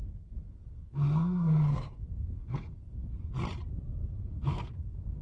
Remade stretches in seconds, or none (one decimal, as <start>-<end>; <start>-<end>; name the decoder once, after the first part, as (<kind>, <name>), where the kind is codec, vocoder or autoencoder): 0.0-3.1 (codec, SNAC); 4.0-5.2